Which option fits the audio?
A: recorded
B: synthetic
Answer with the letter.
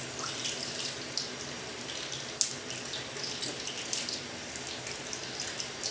A